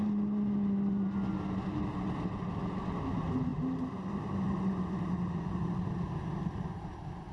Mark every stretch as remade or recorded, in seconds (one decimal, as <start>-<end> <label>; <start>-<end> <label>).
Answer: 0.0-7.3 recorded